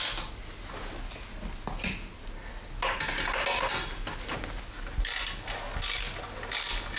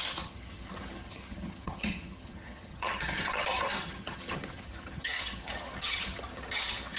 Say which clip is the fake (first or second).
second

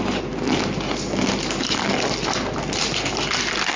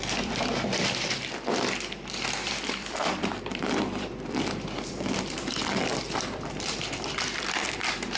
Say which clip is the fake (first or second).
second